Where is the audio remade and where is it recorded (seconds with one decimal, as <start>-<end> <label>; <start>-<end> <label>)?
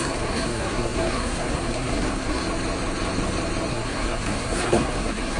0.0-2.4 remade; 2.4-3.7 recorded; 3.7-5.4 remade